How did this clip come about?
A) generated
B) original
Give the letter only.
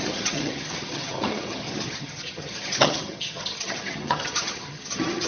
A